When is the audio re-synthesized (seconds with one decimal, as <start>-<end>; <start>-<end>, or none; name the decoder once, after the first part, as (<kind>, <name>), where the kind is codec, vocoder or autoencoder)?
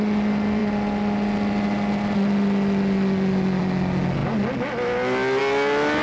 none